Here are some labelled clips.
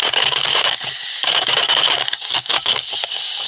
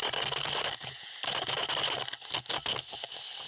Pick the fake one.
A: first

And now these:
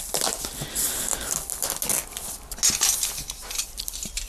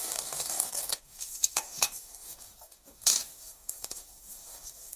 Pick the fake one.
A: second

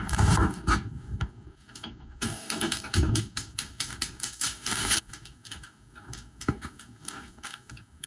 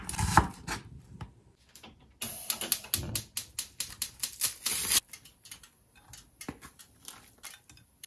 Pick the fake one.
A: first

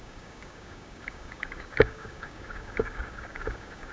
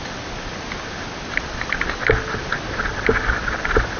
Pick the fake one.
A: first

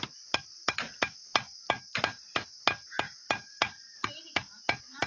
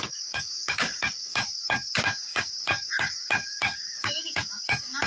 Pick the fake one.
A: second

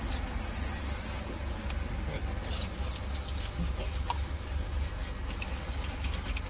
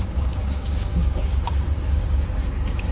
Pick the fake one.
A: second